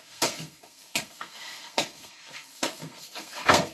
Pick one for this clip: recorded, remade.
remade